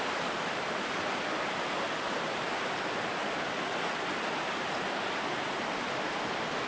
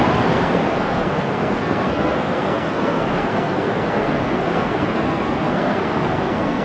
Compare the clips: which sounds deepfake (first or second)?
second